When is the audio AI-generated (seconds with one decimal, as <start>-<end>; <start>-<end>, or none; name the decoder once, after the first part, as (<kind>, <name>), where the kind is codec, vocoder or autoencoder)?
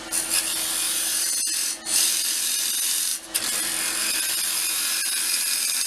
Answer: none